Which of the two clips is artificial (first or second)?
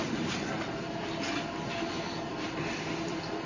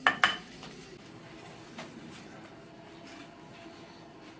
first